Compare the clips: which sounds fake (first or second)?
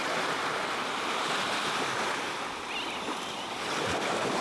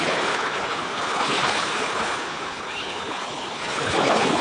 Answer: second